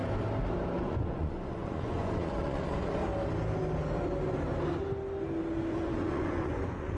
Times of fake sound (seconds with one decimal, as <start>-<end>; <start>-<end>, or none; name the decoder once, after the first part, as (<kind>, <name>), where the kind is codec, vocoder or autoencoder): 0.8-3.0 (vocoder, Vocos); 5.7-7.0

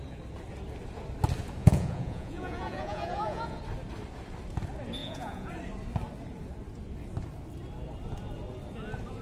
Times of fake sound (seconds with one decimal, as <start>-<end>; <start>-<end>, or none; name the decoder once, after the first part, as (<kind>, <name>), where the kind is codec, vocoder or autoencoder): 1.6-3.6 (vocoder, Vocos); 5.0-5.5

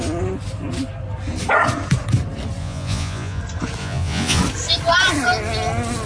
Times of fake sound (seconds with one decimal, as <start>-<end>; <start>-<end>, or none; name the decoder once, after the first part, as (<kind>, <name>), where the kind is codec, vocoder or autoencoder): 2.6-3.4 (vocoder, Vocos); 3.8-4.4

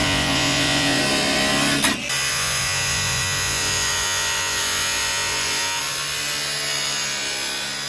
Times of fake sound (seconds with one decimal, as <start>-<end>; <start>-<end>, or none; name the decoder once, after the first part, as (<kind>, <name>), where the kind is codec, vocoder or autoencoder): 0.0-1.0 (vocoder, Vocos); 2.3-5.8

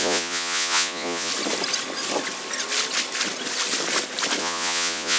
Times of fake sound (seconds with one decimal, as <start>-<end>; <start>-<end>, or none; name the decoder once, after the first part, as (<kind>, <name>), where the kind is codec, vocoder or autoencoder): 0.0-1.3 (vocoder, Vocos); 4.4-5.2

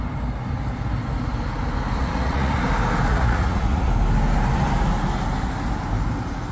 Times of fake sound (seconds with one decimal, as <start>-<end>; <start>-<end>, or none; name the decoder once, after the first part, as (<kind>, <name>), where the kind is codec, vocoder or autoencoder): 2.0-2.7 (vocoder, Vocos); 3.1-3.9

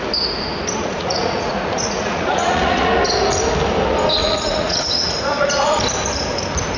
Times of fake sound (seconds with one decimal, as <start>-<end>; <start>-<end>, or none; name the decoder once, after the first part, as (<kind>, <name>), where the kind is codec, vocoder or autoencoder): 0.8-2.9 (vocoder, Vocos); 4.2-5.8